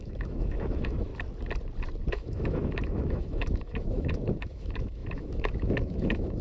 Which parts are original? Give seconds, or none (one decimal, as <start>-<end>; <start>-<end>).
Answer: 1.1-2.1